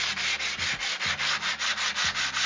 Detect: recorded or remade recorded